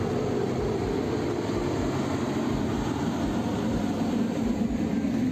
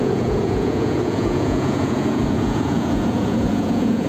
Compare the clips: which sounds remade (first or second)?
second